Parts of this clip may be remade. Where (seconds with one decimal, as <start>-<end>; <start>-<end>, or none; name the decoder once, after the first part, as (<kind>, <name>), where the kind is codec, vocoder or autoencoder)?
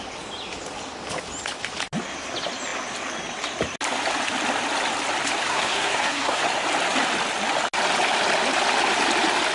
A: 5.5-6.4 (codec, SNAC)